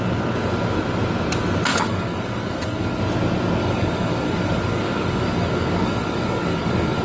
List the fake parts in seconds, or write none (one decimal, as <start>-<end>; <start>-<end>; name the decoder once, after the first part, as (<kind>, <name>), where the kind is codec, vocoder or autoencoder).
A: 1.7-3.0 (codec, DAC); 3.6-7.0